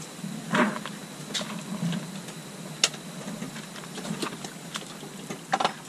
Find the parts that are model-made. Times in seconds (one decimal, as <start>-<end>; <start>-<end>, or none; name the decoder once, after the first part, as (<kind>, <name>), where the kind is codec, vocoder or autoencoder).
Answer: none